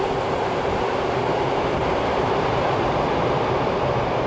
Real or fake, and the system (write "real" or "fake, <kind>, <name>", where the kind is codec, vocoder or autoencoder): fake, vocoder, BigVGAN v2